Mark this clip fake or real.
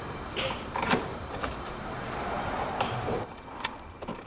fake